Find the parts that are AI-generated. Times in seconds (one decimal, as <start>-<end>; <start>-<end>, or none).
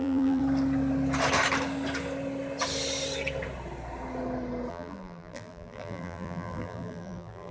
0.0-0.4; 4.7-7.5